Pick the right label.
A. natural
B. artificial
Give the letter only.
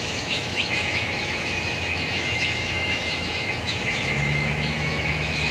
B